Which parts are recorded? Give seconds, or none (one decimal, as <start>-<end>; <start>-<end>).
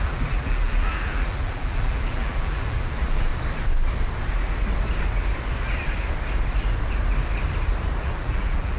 3.3-8.0